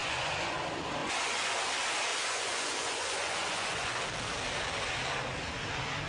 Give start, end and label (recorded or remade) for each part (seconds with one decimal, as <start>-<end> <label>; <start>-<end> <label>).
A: 0.0-0.6 remade; 0.6-1.0 recorded; 1.0-1.6 remade; 1.6-2.1 recorded; 2.1-4.0 remade; 4.0-6.1 recorded